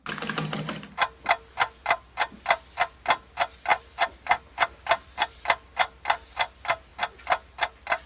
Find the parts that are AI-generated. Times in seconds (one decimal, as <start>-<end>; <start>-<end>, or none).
3.7-5.4